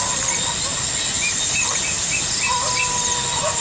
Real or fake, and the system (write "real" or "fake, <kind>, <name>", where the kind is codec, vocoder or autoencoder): real